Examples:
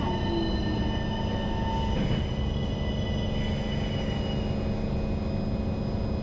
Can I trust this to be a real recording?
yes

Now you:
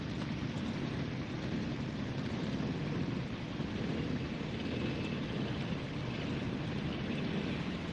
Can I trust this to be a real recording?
yes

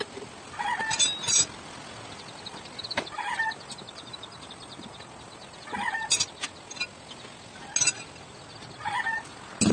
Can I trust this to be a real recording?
yes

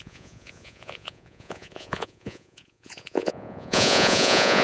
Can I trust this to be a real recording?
no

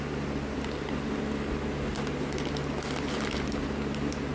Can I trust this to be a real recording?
yes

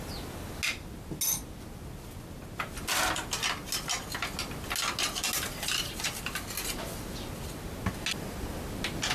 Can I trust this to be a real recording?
yes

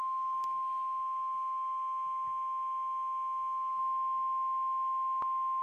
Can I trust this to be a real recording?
yes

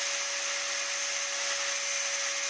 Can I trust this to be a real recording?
yes